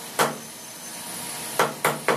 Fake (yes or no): no